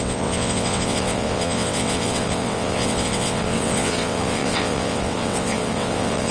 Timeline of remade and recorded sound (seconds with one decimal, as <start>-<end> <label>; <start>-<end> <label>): 0.0-6.3 remade